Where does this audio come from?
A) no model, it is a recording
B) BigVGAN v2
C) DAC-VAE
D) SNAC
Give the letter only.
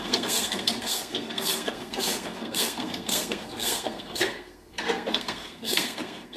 D